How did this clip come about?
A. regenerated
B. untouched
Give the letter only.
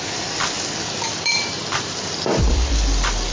A